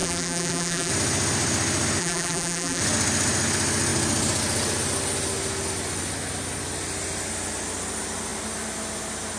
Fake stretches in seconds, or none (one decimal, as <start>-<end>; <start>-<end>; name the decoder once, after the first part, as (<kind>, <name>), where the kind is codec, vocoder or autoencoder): 0.0-0.9 (vocoder, BigVGAN v2); 2.0-2.8